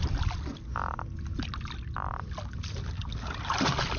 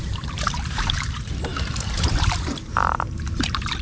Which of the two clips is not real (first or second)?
second